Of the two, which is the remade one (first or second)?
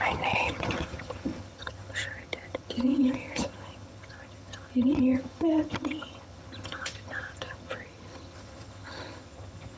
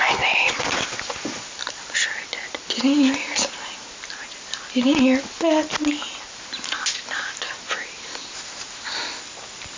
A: first